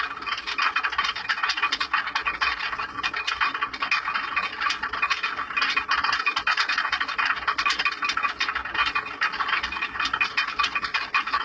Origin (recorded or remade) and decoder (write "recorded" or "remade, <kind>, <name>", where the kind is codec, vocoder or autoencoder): recorded